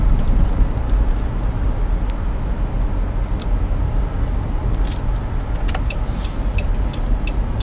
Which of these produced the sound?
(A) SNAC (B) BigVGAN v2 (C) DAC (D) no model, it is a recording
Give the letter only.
D